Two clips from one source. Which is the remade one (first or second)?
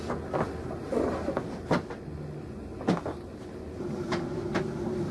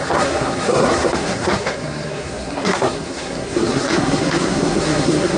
second